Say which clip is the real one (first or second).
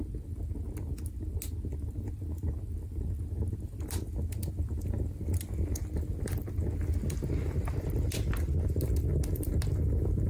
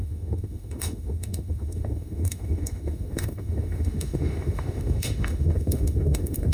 first